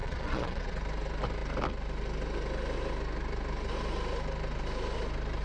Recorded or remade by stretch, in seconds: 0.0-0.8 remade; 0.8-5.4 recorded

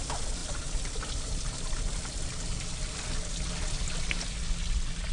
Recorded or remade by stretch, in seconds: 0.0-5.1 recorded

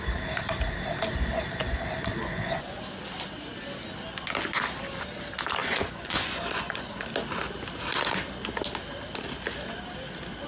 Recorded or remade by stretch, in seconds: 0.0-2.3 recorded; 2.3-2.8 remade; 2.8-5.6 recorded; 5.6-6.9 remade; 6.9-10.5 recorded

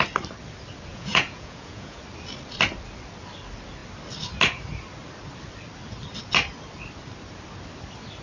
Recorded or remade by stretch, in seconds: 0.0-0.9 recorded; 0.9-2.0 remade; 2.0-8.2 recorded

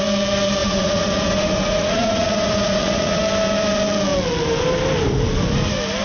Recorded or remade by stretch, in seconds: 0.0-0.6 recorded; 0.6-3.2 remade; 3.2-6.0 recorded

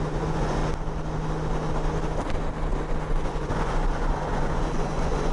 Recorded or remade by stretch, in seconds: 0.0-0.6 remade; 0.6-3.1 recorded; 3.1-5.3 remade

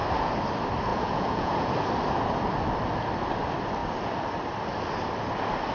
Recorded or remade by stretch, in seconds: 0.0-0.9 recorded; 0.9-1.7 remade; 1.7-5.7 recorded

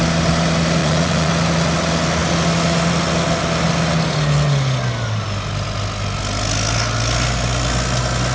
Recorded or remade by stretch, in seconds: 0.0-0.8 recorded; 0.8-1.3 remade; 1.3-8.3 recorded